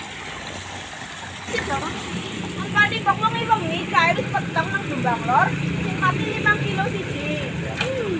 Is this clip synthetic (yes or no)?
no